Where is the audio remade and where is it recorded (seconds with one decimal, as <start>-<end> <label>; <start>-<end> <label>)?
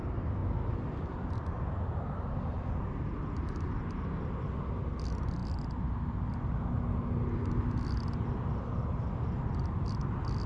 0.0-10.5 recorded